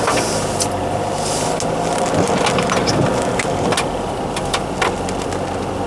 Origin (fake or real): real